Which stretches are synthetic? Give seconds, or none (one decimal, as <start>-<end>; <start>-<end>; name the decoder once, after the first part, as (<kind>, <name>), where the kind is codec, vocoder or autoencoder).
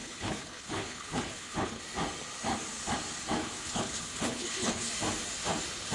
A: 0.0-1.8 (codec, HILCodec); 3.4-4.9